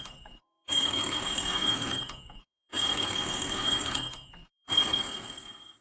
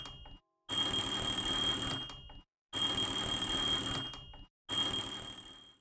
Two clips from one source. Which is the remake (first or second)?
first